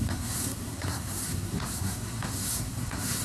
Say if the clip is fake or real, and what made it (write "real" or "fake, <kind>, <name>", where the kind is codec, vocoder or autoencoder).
fake, codec, SNAC